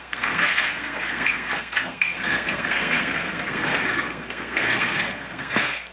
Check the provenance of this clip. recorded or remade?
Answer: remade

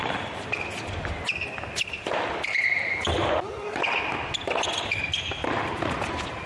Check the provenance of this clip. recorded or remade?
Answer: recorded